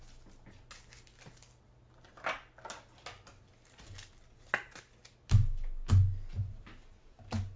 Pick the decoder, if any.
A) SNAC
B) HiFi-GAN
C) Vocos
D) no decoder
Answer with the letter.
D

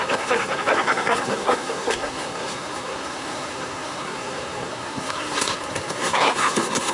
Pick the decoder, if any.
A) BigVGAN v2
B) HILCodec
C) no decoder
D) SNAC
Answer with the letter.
D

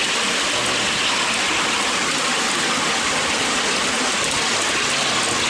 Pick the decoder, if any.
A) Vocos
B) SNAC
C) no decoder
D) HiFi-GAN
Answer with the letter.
C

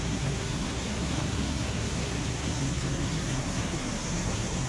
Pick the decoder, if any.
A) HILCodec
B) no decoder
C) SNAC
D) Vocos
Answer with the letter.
C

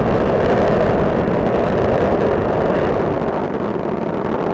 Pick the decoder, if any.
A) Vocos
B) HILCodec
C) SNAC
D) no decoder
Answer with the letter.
D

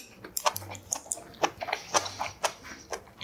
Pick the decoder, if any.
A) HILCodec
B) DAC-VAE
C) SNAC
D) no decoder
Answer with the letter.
D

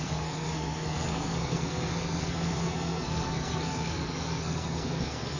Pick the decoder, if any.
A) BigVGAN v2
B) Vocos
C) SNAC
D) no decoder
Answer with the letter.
C